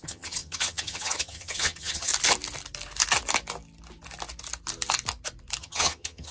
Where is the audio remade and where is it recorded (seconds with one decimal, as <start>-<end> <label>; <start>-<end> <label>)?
0.0-2.1 remade; 2.1-5.6 recorded; 5.6-6.3 remade